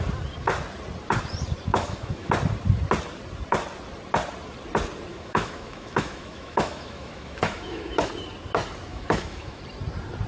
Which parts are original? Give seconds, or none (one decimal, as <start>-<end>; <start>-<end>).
0.0-1.7; 2.3-5.1; 8.1-8.9; 9.6-10.3